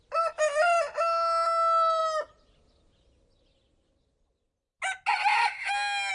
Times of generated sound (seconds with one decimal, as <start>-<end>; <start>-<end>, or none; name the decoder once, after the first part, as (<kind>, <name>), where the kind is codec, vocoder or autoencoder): none